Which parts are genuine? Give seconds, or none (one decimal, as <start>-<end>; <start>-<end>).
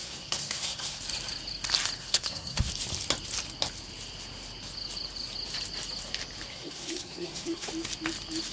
1.0-2.0; 2.7-6.5; 7.7-8.5